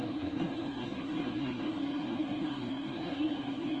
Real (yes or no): no